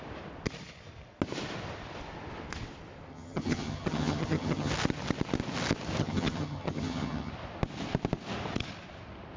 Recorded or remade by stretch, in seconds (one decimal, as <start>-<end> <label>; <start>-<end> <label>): 0.0-3.1 recorded; 3.1-4.7 remade; 4.7-6.0 recorded; 6.0-7.3 remade; 7.3-9.4 recorded